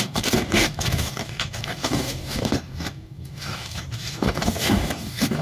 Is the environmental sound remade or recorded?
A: remade